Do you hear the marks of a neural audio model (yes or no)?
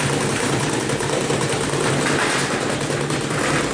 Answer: yes